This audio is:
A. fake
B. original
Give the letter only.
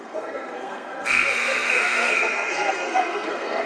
A